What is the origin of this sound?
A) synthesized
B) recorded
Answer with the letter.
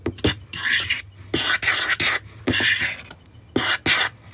B